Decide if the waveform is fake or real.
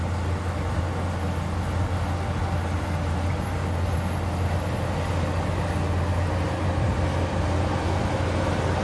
real